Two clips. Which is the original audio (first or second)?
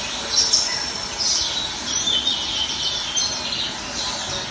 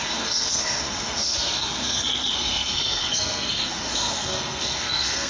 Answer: first